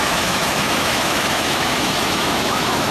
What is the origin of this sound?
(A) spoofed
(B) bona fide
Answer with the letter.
A